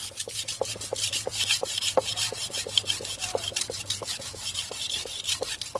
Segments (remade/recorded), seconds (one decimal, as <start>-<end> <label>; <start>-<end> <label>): 0.0-0.7 recorded; 0.7-5.8 remade